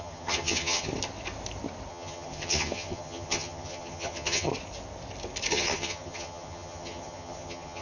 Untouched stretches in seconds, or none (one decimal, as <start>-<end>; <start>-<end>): 0.9-1.9; 4.5-5.5